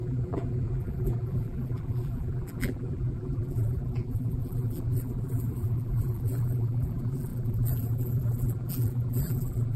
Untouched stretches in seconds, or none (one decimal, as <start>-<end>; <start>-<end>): none